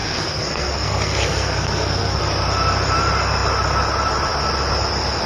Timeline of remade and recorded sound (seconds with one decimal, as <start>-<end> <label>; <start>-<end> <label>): 0.0-2.2 remade; 2.2-5.3 recorded